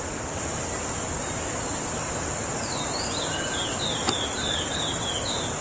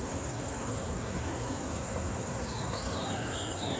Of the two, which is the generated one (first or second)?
second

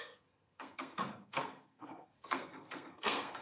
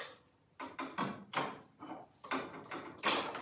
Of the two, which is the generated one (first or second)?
first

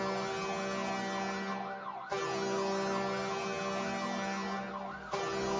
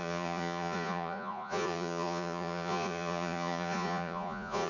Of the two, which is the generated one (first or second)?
second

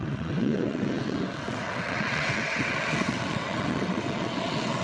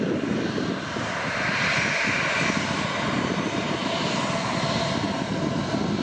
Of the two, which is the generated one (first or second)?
first